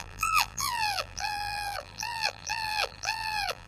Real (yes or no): no